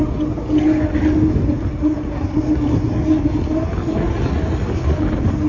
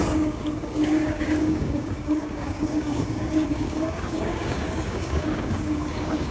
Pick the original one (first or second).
first